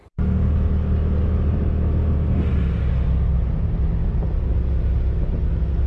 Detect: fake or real real